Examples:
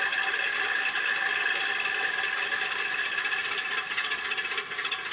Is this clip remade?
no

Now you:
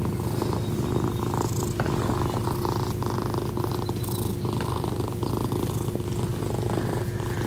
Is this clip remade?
no